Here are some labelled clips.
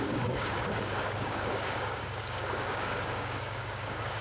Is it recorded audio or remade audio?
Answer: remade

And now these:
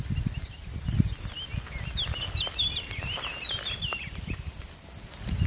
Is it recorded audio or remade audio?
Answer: recorded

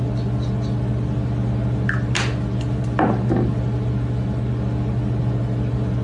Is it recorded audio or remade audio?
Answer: recorded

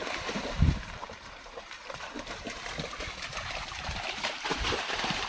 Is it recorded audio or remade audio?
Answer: remade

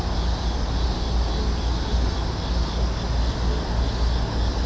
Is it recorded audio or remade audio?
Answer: recorded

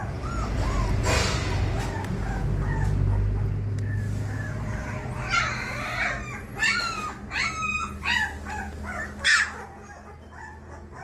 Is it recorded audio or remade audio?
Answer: recorded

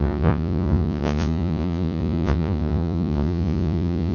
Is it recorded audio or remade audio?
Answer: remade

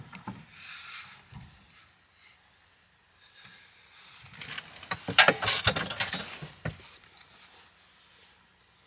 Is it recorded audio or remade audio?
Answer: recorded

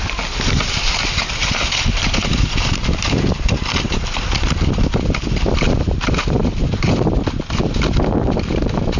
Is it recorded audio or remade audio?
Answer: recorded